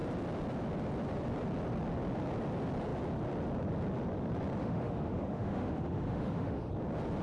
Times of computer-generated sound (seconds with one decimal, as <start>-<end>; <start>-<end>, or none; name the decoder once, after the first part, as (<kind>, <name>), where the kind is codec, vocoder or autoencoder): 4.6-6.7 (autoencoder, DAC-VAE)